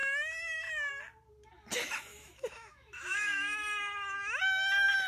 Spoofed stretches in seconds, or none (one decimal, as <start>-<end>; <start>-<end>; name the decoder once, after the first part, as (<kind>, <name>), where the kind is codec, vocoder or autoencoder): 0.0-0.9 (autoencoder, DAC-VAE); 2.1-4.4